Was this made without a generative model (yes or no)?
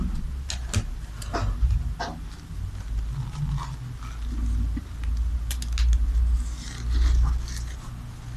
yes